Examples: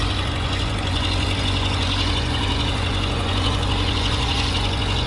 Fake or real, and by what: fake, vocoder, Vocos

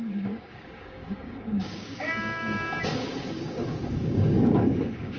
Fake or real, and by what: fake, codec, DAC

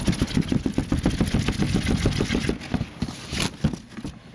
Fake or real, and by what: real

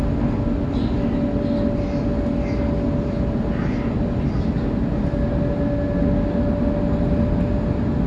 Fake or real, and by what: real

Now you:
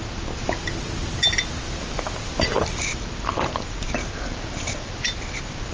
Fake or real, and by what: real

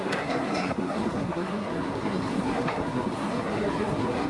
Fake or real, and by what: fake, codec, SNAC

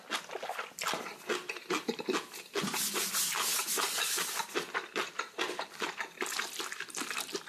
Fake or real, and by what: real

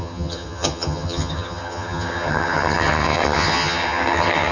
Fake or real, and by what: fake, vocoder, HiFi-GAN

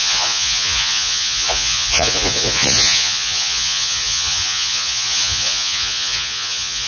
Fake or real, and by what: fake, vocoder, Vocos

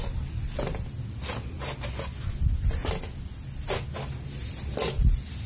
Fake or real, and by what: real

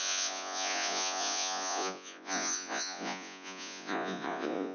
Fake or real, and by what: fake, vocoder, Vocos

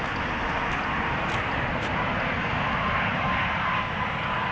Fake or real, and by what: real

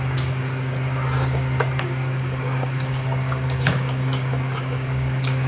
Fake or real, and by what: fake, codec, DAC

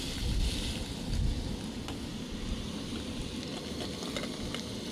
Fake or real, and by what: real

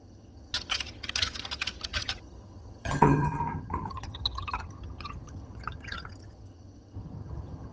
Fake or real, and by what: fake, vocoder, HiFi-GAN